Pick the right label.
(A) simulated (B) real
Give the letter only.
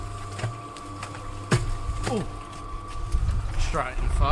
B